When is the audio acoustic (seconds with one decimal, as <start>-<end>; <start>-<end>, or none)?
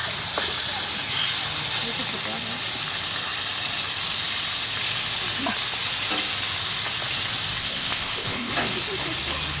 0.0-7.6; 8.5-9.6